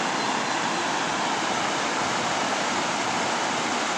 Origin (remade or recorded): recorded